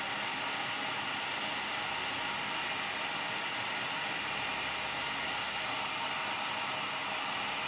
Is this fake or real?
real